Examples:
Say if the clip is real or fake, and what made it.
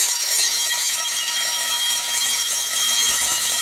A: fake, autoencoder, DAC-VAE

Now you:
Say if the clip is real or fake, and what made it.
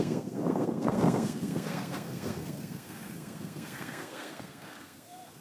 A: fake, codec, SNAC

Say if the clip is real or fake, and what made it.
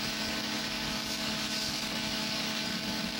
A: fake, codec, DAC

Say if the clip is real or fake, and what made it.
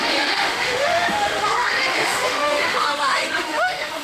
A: fake, autoencoder, DAC-VAE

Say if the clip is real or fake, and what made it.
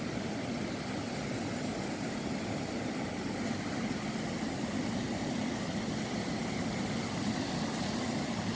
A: real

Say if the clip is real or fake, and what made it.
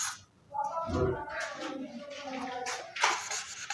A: real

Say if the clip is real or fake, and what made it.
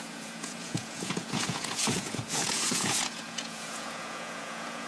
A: fake, vocoder, Vocos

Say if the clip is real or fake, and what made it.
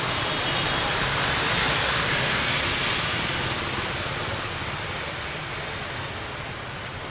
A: real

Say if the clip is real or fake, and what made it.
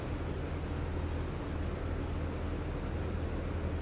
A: real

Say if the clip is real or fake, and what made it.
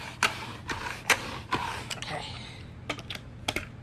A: real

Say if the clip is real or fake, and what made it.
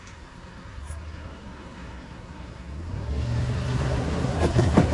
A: fake, codec, SNAC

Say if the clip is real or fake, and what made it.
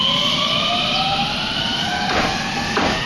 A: real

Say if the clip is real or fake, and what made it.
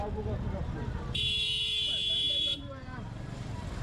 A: fake, vocoder, BigVGAN v2